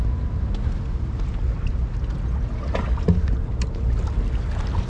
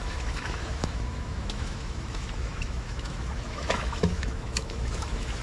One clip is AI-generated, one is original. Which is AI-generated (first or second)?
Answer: second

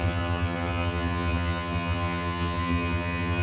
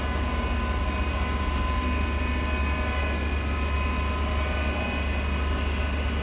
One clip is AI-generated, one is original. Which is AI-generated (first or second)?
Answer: first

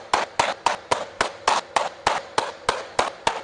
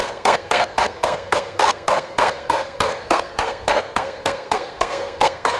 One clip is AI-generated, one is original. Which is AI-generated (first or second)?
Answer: second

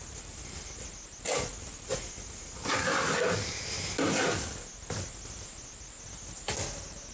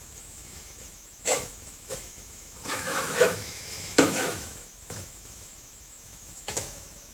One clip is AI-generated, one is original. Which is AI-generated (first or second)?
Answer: second